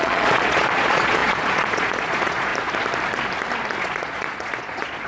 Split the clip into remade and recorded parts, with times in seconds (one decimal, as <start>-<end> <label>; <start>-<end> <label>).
0.0-2.5 remade; 2.5-3.8 recorded; 3.8-5.1 remade